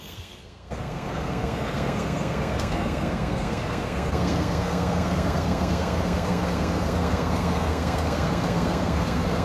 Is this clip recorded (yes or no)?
no